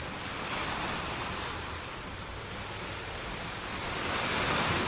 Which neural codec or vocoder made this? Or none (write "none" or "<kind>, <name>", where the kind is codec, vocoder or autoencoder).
none